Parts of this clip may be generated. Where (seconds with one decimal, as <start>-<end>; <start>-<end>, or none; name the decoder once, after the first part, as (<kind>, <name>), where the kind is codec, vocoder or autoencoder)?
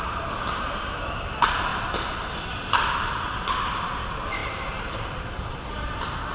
0.0-1.7 (vocoder, BigVGAN v2); 2.9-6.3